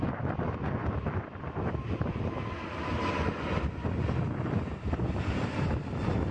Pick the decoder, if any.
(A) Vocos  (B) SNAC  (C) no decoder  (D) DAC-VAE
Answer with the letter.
C